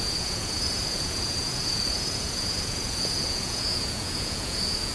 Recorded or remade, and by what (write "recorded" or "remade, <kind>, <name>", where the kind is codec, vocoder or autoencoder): remade, vocoder, Vocos